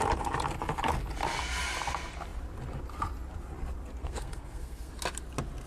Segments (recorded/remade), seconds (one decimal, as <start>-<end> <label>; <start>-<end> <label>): 0.0-4.0 recorded; 4.0-4.9 remade; 4.9-5.7 recorded